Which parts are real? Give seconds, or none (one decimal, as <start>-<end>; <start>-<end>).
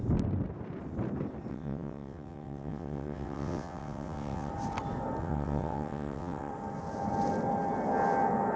0.0-1.5; 4.5-5.2; 6.5-8.6